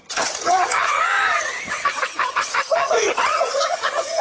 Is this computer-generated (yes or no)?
yes